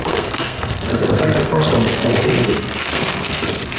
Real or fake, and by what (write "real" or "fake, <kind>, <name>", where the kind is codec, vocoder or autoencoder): fake, codec, SNAC